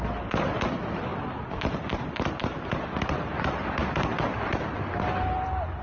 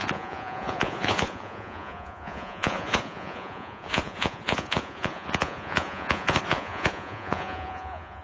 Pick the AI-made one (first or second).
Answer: second